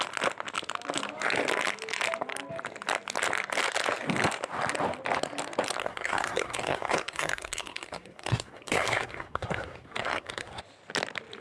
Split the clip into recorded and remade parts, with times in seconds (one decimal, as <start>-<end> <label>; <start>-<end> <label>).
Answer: 0.0-5.8 recorded; 5.8-10.6 remade; 10.6-11.4 recorded

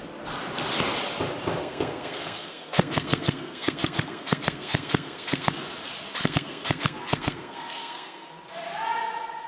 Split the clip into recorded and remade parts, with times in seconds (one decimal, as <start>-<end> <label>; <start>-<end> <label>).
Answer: 0.0-1.6 recorded; 1.6-5.5 remade; 5.5-6.2 recorded; 6.2-8.3 remade; 8.3-9.5 recorded

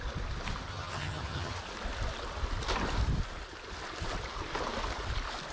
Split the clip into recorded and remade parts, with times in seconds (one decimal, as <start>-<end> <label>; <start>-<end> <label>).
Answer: 0.0-0.7 recorded; 0.7-1.6 remade; 1.6-5.5 recorded

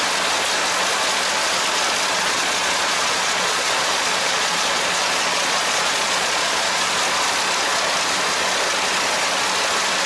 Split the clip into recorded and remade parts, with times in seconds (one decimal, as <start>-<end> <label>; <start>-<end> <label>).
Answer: 0.0-2.1 recorded; 2.1-6.9 remade; 6.9-10.1 recorded

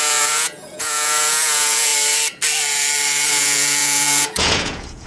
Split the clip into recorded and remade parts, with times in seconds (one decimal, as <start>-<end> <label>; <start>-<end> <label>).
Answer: 0.0-1.9 remade; 1.9-3.3 recorded; 3.3-5.1 remade